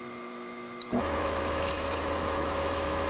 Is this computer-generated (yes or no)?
yes